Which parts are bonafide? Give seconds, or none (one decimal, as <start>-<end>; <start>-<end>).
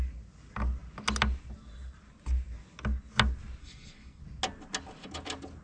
0.0-3.6; 4.2-5.6